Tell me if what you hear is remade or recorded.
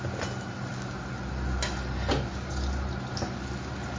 recorded